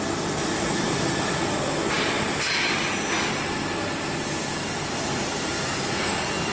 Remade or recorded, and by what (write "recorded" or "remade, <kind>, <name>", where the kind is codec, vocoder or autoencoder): recorded